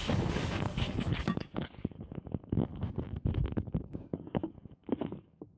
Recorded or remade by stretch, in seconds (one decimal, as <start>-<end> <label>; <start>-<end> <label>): 0.0-2.7 remade; 2.7-3.5 recorded; 3.5-5.6 remade